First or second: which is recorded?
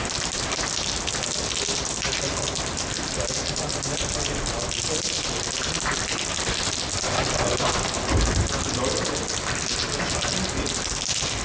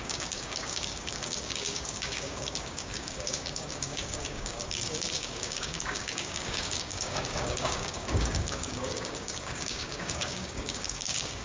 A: first